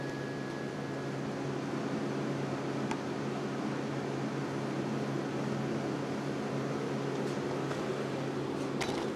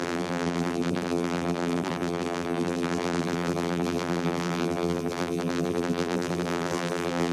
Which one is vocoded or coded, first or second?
second